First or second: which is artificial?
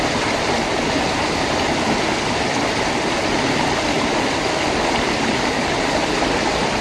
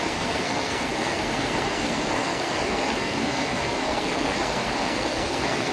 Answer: second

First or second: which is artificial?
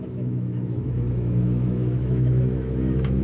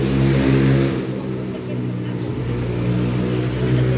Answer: first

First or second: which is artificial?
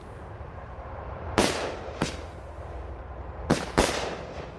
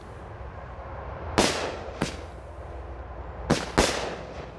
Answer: first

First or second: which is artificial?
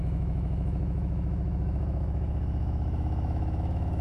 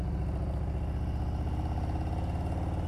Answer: first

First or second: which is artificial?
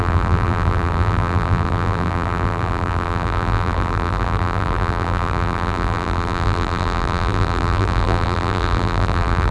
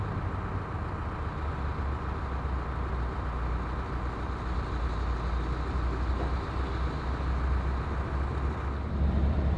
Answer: first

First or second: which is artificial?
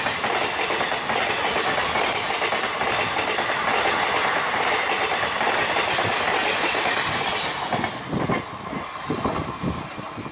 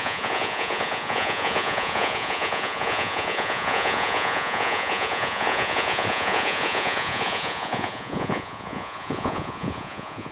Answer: second